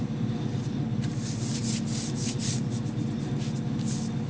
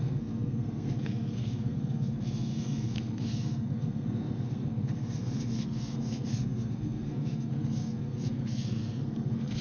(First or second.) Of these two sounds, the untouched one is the first